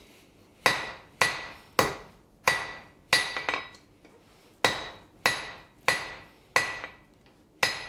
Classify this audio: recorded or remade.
recorded